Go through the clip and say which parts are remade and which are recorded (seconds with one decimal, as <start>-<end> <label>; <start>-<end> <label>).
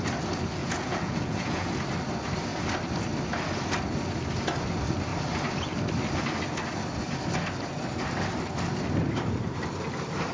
0.0-0.6 recorded; 0.6-1.7 remade; 1.7-10.3 recorded